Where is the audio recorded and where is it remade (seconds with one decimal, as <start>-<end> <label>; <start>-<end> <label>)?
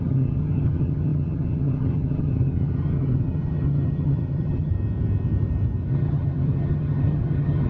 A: 0.0-4.7 remade; 4.7-5.9 recorded; 5.9-7.7 remade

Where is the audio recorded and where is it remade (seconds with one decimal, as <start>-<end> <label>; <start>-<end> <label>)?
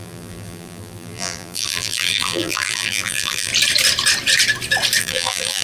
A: 0.0-3.5 remade; 3.5-5.0 recorded; 5.0-5.6 remade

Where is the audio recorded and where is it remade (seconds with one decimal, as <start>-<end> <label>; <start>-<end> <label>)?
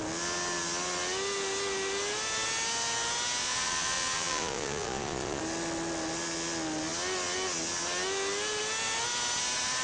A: 0.0-3.4 recorded; 3.4-5.4 remade; 5.4-9.8 recorded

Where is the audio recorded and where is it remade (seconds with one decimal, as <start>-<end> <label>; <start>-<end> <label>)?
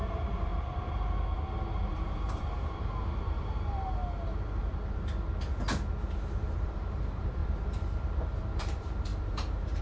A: 0.0-0.5 remade; 0.5-1.9 recorded; 1.9-4.0 remade; 4.0-6.4 recorded; 6.4-7.4 remade; 7.4-8.4 recorded; 8.4-9.8 remade